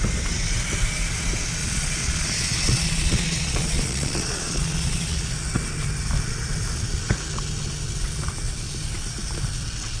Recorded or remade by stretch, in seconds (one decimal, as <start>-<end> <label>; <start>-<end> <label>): 0.0-1.6 recorded; 1.6-5.3 remade; 5.3-10.0 recorded